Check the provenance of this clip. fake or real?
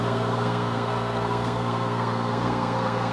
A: fake